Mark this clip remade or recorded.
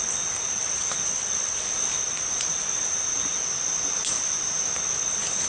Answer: recorded